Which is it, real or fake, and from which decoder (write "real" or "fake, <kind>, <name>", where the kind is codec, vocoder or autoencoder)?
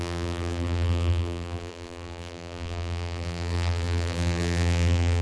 fake, vocoder, BigVGAN v2